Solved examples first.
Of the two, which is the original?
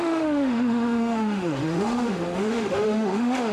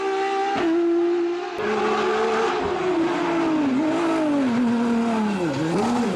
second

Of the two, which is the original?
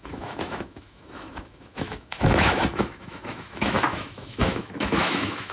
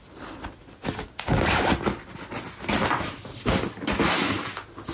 second